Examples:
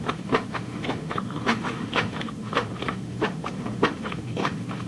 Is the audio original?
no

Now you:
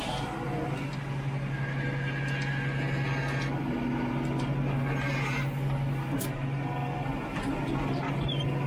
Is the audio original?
yes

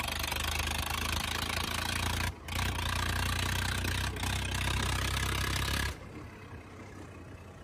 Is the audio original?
yes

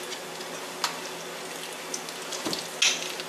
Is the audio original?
yes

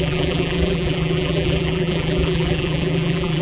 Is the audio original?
no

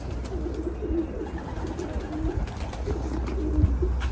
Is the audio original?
yes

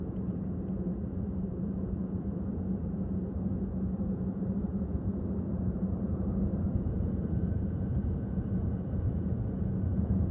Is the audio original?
no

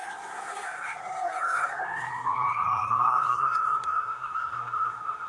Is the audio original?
no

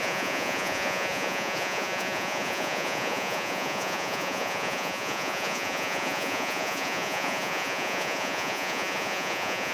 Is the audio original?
no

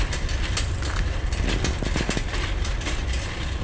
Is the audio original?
yes